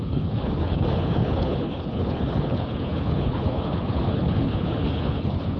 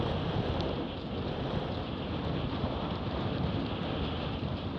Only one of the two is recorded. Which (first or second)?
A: second